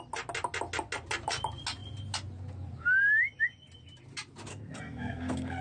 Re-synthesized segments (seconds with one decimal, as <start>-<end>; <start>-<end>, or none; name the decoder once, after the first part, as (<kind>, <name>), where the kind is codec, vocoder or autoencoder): 4.5-5.6 (codec, SNAC)

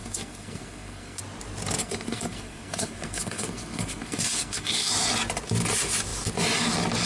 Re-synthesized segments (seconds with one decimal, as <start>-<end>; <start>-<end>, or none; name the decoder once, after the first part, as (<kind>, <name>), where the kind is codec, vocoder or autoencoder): 0.0-1.2 (codec, SNAC); 1.8-4.9

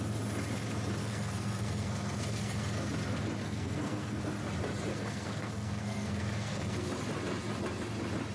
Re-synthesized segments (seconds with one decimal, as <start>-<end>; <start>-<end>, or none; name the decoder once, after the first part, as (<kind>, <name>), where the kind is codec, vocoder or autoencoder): 1.0-2.9 (codec, SNAC); 3.4-4.2; 4.9-6.9